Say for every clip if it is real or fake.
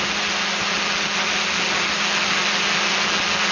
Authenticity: real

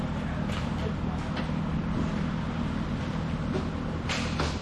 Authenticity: real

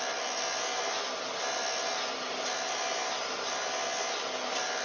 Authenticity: real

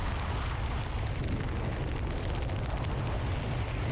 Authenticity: real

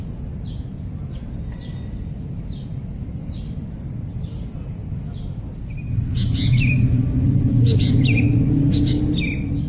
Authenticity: real